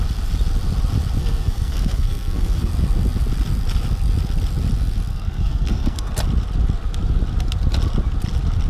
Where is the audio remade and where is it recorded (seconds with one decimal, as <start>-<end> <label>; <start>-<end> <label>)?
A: 0.0-1.2 recorded; 1.2-2.7 remade; 2.7-5.1 recorded; 5.1-6.1 remade; 6.1-8.7 recorded